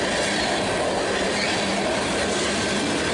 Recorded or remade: recorded